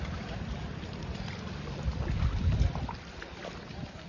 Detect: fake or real fake